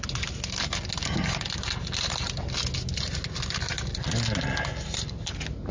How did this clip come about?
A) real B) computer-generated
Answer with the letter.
A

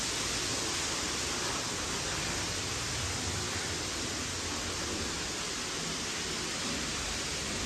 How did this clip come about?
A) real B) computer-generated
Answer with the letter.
A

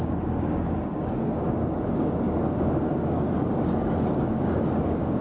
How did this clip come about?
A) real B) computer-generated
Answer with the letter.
B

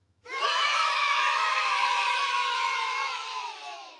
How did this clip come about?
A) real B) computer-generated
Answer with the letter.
B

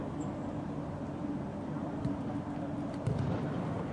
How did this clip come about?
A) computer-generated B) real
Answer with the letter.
A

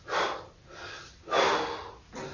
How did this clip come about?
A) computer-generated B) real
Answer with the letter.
B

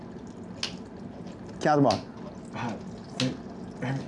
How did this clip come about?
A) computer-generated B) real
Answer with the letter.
B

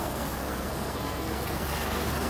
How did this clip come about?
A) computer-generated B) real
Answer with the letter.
A